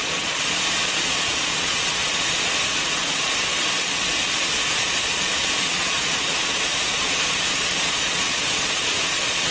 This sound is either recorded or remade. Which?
remade